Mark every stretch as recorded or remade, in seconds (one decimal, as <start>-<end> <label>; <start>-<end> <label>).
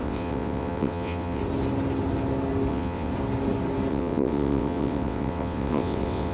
0.0-1.4 remade; 1.4-2.7 recorded; 2.7-3.1 remade; 3.1-3.9 recorded; 3.9-6.3 remade